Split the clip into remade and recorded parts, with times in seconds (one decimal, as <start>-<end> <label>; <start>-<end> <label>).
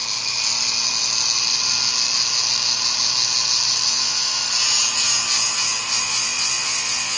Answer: 0.0-3.9 recorded; 3.9-4.4 remade; 4.4-6.0 recorded; 6.0-7.2 remade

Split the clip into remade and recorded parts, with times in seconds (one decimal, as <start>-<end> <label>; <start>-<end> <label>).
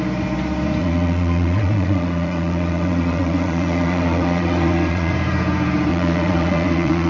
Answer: 0.0-0.8 recorded; 0.8-5.1 remade; 5.1-5.9 recorded; 5.9-7.1 remade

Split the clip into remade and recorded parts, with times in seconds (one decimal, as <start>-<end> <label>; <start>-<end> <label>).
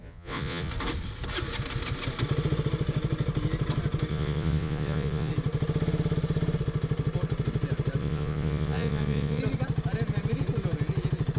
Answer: 0.0-0.7 remade; 0.7-4.1 recorded; 4.1-5.3 remade; 5.3-8.0 recorded; 8.0-9.4 remade; 9.4-11.4 recorded